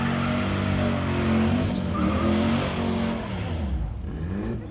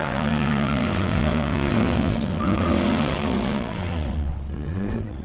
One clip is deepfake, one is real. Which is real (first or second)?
first